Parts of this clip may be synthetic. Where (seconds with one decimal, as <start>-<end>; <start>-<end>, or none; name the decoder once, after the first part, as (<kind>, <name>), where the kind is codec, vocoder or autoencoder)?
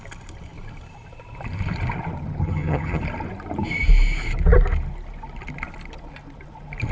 2.4-3.0 (vocoder, HiFi-GAN)